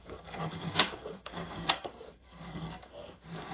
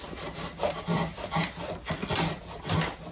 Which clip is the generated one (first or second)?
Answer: first